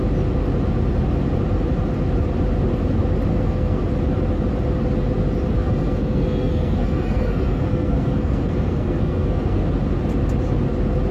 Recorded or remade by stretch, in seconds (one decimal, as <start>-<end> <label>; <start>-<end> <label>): 0.0-3.3 recorded; 3.3-3.8 remade; 3.8-5.6 recorded; 5.6-9.6 remade; 9.6-11.1 recorded